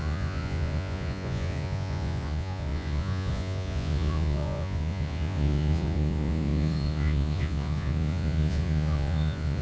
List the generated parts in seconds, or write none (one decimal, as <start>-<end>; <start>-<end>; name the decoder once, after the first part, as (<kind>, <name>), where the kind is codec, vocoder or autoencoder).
0.0-9.6 (vocoder, Vocos)

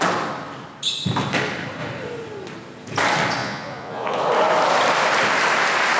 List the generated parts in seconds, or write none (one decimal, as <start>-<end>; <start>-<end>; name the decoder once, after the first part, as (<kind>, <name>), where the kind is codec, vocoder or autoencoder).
3.4-4.2 (vocoder, Vocos)

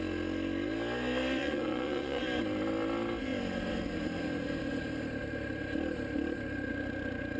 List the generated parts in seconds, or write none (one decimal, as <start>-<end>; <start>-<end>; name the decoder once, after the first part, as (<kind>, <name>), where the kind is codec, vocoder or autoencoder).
1.4-2.2 (vocoder, Vocos)

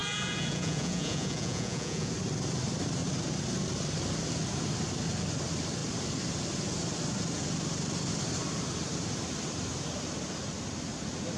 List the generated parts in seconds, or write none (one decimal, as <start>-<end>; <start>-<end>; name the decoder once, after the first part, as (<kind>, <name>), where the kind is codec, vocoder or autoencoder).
0.0-2.1 (vocoder, Vocos)

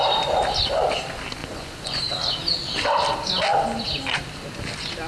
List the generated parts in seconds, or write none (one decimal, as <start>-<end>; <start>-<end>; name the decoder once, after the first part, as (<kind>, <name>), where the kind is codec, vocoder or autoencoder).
1.4-2.0 (vocoder, Vocos)

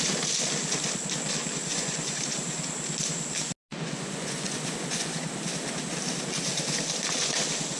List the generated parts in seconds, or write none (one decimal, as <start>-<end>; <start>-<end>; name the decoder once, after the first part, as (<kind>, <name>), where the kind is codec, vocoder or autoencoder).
1.7-2.2 (vocoder, Vocos); 3.7-5.3

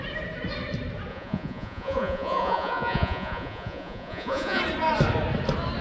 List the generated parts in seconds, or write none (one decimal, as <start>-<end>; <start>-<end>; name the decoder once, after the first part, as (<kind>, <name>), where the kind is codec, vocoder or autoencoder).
1.1-4.6 (vocoder, Vocos)